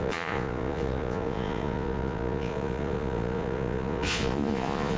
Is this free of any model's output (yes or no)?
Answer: no